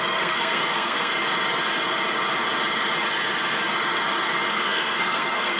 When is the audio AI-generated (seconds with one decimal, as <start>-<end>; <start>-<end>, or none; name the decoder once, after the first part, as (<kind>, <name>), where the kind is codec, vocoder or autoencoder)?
0.0-1.1 (codec, SNAC); 4.5-5.6